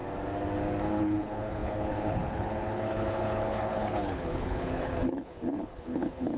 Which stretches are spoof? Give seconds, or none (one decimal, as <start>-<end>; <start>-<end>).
0.9-6.4